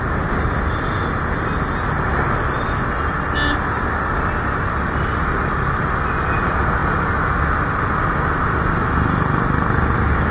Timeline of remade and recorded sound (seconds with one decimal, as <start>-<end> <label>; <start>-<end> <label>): 0.0-10.3 recorded